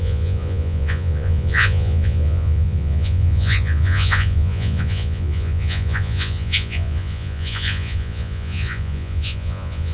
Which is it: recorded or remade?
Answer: remade